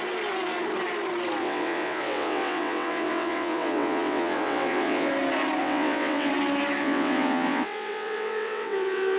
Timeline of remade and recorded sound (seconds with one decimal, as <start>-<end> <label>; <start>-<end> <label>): 0.0-1.4 recorded; 1.4-5.1 remade; 5.1-5.6 recorded; 5.6-6.3 remade; 6.3-6.8 recorded; 6.8-9.2 remade